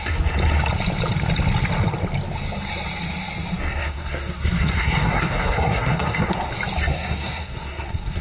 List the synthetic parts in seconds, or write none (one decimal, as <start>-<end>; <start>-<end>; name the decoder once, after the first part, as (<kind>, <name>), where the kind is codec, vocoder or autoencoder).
3.7-6.5 (codec, SNAC); 6.9-8.2